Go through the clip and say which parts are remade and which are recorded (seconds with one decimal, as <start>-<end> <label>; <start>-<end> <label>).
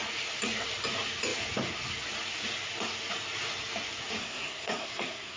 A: 0.0-4.2 recorded; 4.2-5.4 remade